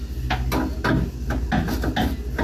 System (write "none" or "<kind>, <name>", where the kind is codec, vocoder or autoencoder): none